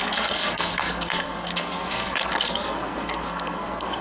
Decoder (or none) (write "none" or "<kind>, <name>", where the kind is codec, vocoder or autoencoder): codec, SNAC